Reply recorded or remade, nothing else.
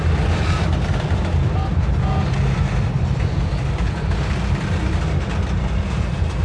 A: remade